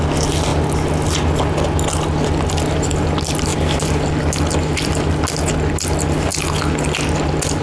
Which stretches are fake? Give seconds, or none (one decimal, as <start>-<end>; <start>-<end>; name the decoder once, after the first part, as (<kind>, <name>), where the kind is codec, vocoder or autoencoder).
none